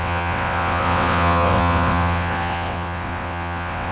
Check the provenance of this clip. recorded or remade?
remade